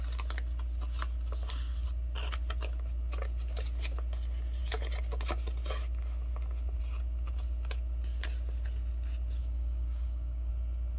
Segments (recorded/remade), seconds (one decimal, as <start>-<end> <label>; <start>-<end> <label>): 0.0-9.4 recorded; 9.4-10.5 remade; 10.5-11.0 recorded